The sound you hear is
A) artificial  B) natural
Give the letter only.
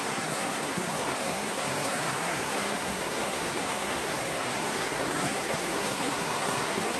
A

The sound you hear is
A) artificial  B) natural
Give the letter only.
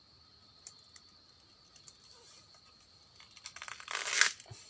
B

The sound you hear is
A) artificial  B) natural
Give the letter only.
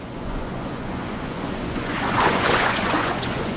A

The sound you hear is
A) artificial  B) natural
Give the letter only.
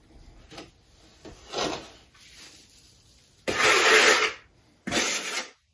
B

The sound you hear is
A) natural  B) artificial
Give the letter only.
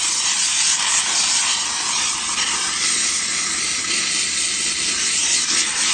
A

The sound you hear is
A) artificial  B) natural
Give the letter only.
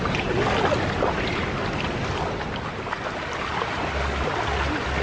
B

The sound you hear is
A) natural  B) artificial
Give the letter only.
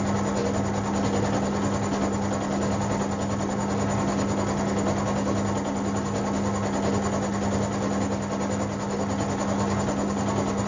A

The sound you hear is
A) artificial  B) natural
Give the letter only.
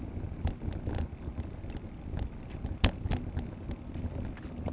B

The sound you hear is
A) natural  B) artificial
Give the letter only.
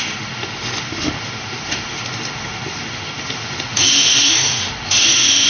B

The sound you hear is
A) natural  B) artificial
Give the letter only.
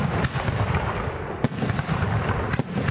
A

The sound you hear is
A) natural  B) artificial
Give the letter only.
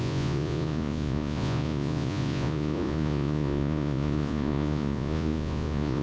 B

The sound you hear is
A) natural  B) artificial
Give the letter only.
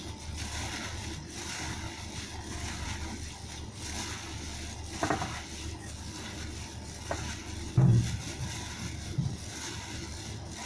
A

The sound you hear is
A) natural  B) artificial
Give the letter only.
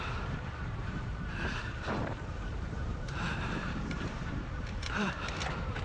B